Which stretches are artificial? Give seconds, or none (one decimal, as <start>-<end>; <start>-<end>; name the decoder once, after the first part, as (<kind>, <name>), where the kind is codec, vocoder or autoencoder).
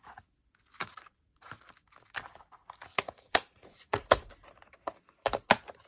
0.8-1.5 (vocoder, Vocos); 2.9-4.3